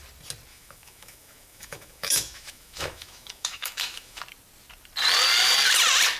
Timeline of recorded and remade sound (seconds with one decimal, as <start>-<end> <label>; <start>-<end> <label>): 0.0-0.5 recorded; 0.5-4.2 remade; 4.2-6.2 recorded